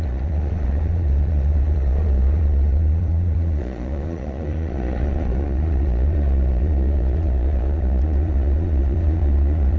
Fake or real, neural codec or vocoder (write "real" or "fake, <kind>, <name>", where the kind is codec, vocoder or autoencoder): fake, vocoder, Vocos